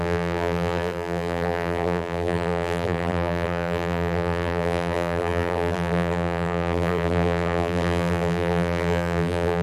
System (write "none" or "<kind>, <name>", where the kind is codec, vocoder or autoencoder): vocoder, BigVGAN v2